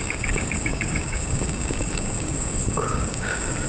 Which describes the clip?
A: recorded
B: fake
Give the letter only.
B